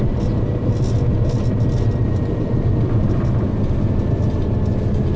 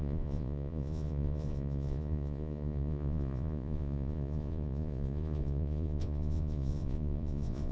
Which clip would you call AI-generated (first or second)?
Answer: second